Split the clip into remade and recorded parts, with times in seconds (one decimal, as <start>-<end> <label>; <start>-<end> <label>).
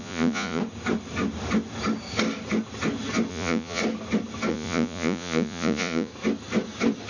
0.0-0.6 remade; 0.6-3.3 recorded; 3.3-3.8 remade; 3.8-4.5 recorded; 4.5-6.1 remade; 6.1-7.1 recorded